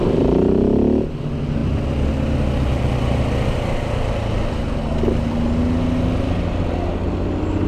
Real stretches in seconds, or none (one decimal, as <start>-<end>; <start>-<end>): 0.0-7.7